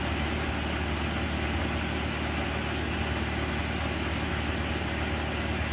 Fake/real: real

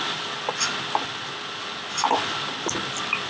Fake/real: real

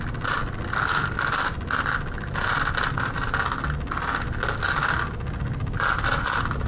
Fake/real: real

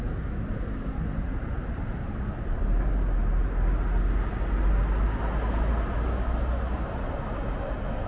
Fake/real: real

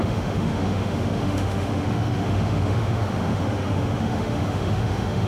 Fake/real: fake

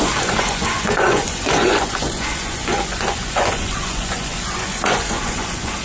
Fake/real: fake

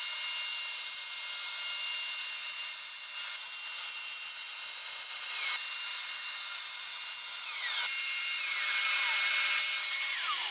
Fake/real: real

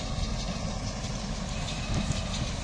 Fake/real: real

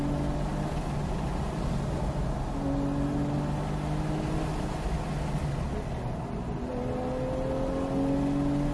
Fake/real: real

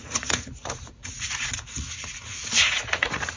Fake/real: fake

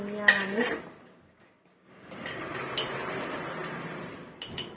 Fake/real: real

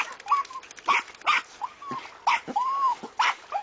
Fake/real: real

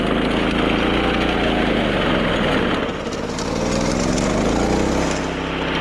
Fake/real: real